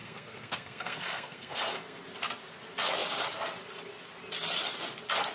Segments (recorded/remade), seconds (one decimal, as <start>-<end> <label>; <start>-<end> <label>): 0.0-2.0 remade; 2.0-5.3 recorded